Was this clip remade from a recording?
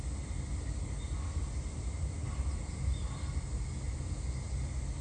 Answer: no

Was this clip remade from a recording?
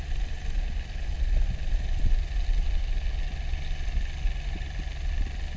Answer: no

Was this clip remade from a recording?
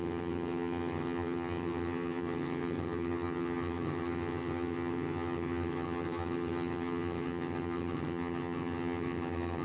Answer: yes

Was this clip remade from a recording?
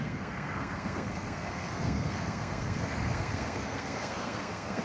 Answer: yes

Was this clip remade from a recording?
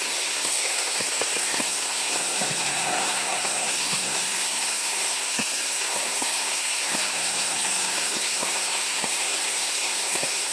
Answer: yes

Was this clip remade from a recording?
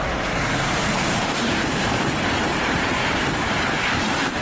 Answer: yes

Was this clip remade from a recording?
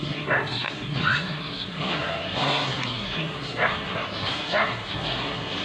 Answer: yes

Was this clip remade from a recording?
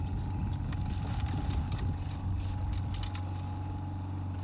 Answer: no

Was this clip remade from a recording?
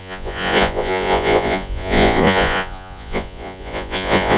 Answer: yes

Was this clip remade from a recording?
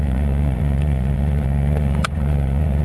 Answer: yes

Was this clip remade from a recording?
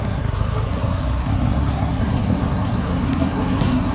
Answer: yes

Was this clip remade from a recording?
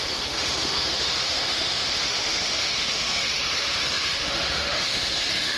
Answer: yes